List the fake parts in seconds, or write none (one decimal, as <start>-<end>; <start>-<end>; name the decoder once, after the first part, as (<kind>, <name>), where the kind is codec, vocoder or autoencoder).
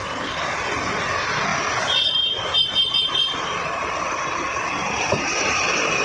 1.5-5.1 (vocoder, BigVGAN v2)